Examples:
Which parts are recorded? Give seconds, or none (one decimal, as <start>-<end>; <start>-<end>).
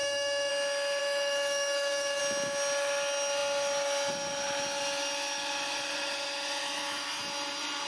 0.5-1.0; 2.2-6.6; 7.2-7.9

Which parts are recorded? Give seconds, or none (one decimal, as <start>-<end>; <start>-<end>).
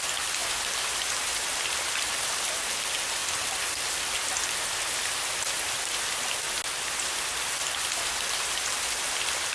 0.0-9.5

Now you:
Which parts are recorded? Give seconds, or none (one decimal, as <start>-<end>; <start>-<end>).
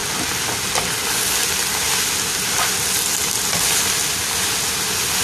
0.0-5.2